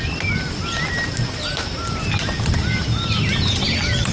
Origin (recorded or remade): recorded